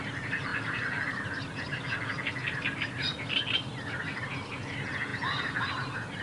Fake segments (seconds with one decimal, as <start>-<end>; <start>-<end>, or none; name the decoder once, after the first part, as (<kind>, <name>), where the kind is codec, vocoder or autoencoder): none